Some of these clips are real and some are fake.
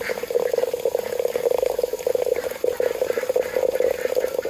real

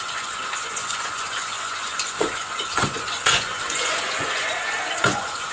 fake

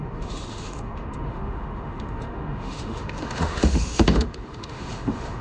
fake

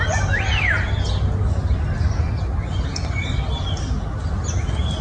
real